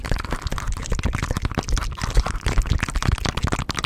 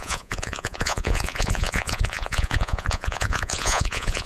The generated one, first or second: second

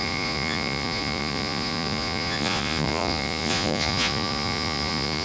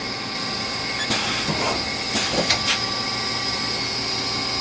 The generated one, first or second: first